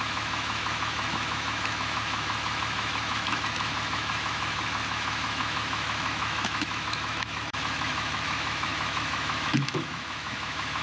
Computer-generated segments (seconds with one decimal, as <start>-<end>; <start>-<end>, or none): 0.0-10.8

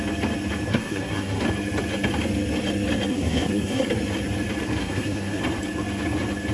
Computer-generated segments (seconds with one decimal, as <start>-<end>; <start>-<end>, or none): 0.7-1.4; 3.1-3.9; 4.8-5.4